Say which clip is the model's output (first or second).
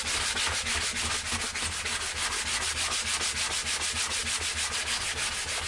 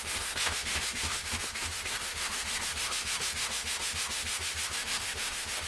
second